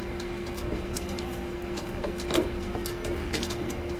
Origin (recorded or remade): remade